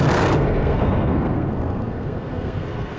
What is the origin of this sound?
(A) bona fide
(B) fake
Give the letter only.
B